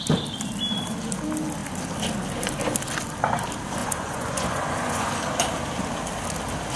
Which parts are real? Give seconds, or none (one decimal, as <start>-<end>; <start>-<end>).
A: 0.0-3.8; 5.1-6.8